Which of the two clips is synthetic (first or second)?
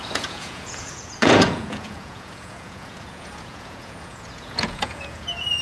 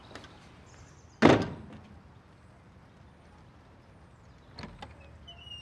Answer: first